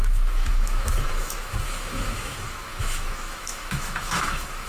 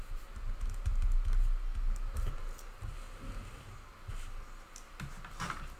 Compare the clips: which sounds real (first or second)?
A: second